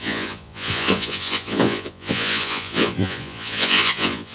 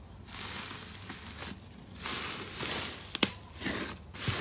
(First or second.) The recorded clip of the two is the second